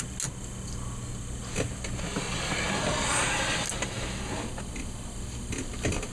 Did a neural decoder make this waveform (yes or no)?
no